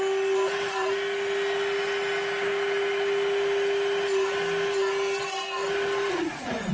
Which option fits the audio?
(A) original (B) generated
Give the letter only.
A